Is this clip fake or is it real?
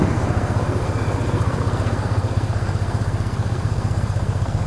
fake